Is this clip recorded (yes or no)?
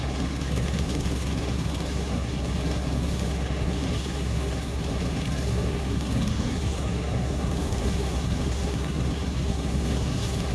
no